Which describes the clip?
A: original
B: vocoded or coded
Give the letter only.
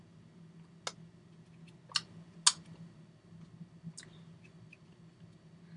A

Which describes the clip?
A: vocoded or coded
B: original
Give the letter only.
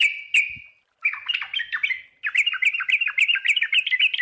B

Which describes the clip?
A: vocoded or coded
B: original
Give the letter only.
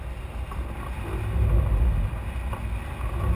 B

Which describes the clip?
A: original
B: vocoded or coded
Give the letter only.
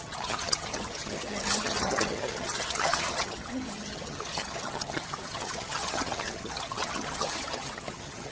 B